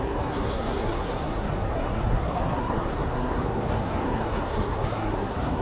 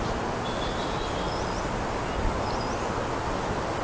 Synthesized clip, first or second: first